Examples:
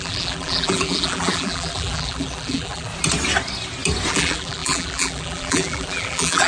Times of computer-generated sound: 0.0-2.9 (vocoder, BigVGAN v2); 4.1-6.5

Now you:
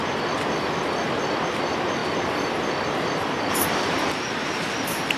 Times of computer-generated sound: 1.0-5.2 (vocoder, BigVGAN v2)

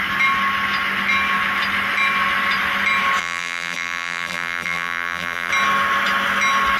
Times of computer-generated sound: 3.2-5.5 (vocoder, BigVGAN v2)

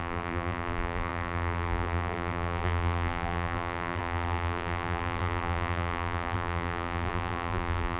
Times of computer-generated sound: 0.0-8.0 (vocoder, BigVGAN v2)

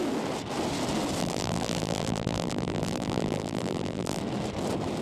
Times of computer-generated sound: 1.2-4.2 (vocoder, BigVGAN v2)

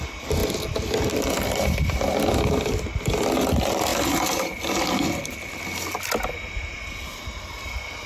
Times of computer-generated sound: 0.0-3.9 (vocoder, BigVGAN v2); 7.5-8.1